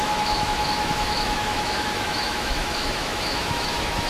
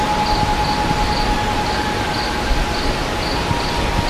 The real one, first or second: second